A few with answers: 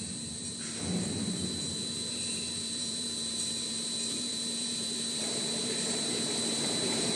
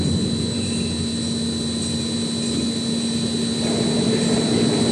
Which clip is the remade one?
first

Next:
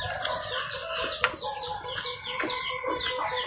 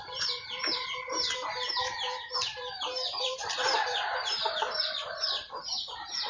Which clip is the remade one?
second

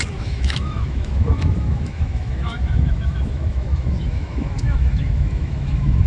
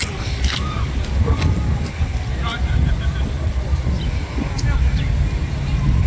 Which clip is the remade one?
first